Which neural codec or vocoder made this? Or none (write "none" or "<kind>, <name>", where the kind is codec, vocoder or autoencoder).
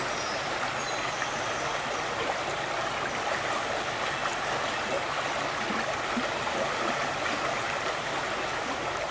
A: none